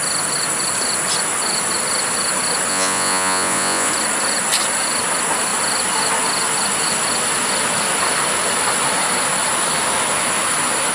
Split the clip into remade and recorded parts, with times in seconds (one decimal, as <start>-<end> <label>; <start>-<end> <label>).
0.0-2.7 recorded; 2.7-3.9 remade; 3.9-10.9 recorded